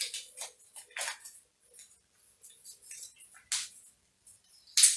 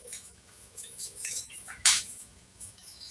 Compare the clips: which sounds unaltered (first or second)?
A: first